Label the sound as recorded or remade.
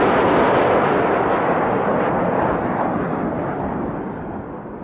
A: recorded